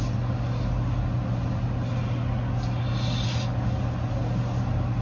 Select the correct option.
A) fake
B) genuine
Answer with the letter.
B